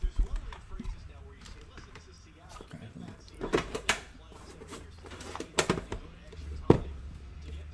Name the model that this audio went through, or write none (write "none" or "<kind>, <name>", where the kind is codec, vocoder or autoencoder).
vocoder, BigVGAN v2